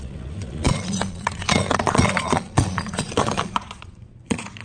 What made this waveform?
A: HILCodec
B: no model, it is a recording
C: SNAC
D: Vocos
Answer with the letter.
D